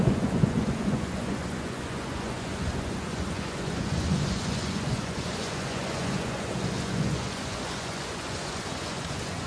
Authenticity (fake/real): fake